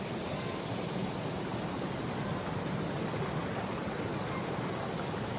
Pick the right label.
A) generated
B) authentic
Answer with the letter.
B